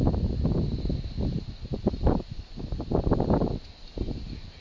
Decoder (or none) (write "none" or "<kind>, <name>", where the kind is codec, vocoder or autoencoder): none